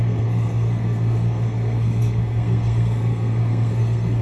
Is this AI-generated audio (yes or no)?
yes